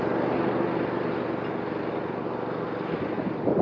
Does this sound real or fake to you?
real